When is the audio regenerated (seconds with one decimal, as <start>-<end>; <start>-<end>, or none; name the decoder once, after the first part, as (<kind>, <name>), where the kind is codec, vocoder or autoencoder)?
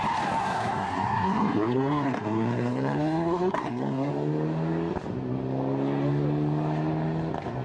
0.4-4.1 (codec, SNAC)